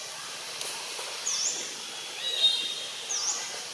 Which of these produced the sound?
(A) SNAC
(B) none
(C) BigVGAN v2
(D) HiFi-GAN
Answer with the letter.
B